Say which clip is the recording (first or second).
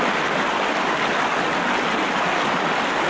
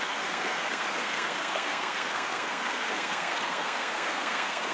first